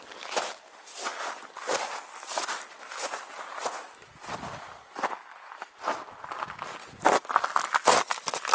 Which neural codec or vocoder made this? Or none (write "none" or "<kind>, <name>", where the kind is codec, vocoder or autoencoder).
none